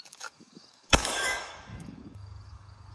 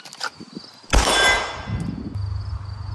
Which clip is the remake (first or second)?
first